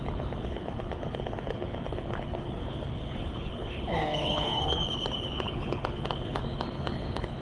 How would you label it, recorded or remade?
remade